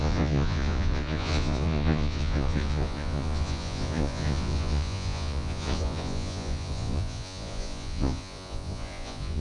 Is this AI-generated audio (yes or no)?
yes